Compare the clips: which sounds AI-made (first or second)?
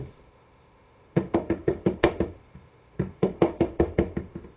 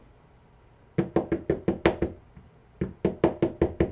first